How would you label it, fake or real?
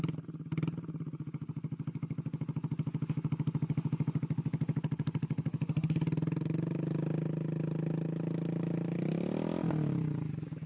real